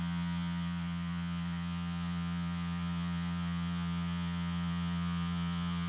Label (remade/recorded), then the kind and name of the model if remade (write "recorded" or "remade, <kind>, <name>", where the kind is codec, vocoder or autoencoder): remade, vocoder, Vocos